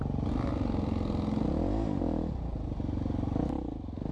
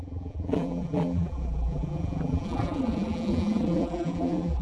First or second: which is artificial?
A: second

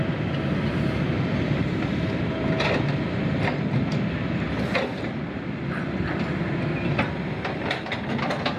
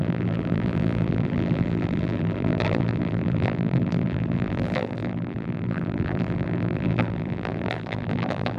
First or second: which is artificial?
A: second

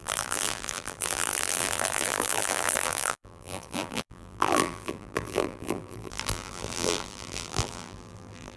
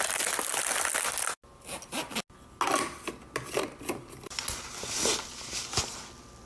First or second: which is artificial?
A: first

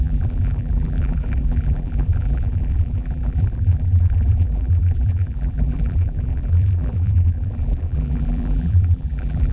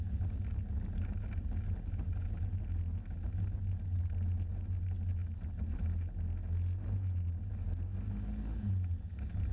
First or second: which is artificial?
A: first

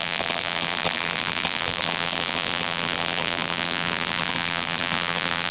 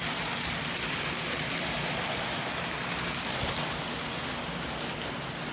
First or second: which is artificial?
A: first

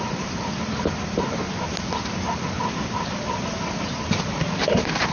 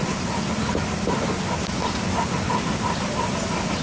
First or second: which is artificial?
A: first